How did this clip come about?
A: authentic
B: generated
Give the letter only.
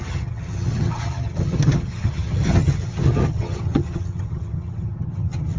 B